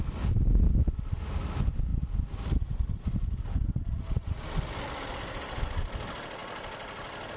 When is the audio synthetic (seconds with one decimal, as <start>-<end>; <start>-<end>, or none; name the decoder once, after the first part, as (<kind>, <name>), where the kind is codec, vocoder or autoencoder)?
none